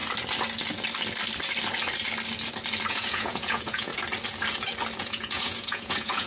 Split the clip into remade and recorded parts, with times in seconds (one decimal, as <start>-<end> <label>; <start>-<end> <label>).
0.0-2.9 recorded; 2.9-3.9 remade; 3.9-5.0 recorded; 5.0-6.3 remade

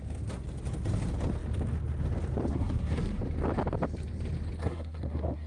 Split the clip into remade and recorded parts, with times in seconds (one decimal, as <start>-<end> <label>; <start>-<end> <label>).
0.0-2.5 recorded; 2.5-3.2 remade; 3.2-4.6 recorded; 4.6-5.5 remade

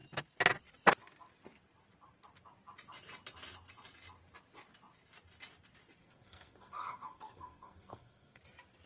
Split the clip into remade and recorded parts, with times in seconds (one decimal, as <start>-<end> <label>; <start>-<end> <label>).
0.0-6.0 recorded; 6.0-8.4 remade; 8.4-8.9 recorded

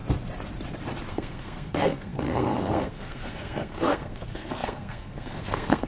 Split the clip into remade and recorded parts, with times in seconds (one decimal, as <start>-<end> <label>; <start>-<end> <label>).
0.0-1.1 recorded; 1.1-5.9 remade